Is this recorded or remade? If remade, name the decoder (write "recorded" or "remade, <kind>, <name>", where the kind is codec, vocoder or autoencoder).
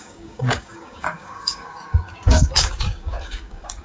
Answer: remade, codec, DAC